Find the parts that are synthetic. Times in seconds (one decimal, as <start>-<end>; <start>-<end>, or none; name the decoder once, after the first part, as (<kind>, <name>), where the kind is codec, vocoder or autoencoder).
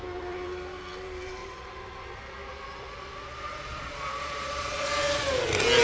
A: 1.4-4.9 (vocoder, Vocos)